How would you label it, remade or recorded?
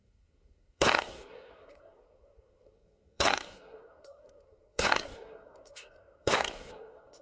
remade